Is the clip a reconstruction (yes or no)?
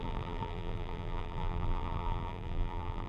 yes